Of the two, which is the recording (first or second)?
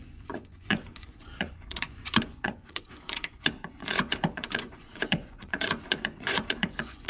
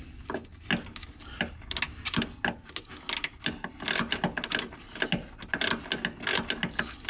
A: second